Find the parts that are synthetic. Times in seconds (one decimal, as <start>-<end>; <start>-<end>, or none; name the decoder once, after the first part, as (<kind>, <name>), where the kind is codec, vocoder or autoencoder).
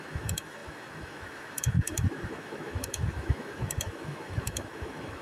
0.0-5.2 (autoencoder, DAC-VAE)